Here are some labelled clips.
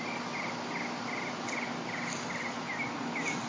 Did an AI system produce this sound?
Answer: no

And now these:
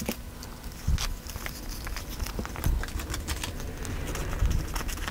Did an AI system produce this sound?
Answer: no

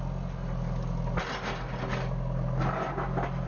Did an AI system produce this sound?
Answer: no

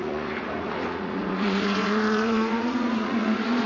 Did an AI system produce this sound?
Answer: yes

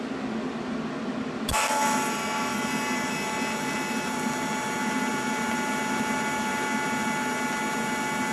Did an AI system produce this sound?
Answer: no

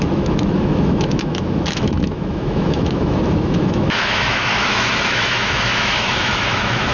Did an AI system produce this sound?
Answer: yes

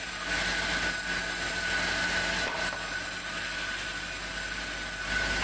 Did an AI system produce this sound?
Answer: no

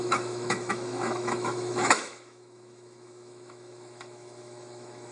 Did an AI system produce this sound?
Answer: yes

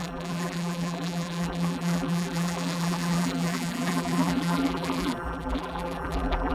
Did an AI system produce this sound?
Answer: yes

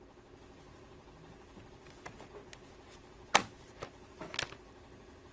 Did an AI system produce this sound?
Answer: no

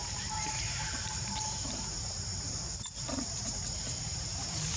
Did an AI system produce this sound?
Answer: yes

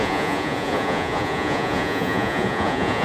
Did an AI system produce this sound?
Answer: yes